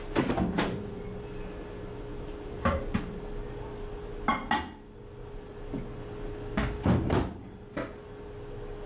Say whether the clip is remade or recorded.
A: recorded